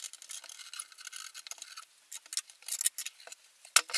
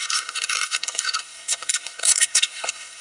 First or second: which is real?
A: first